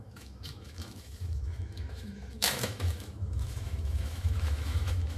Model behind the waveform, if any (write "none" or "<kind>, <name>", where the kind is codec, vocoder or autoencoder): autoencoder, DAC-VAE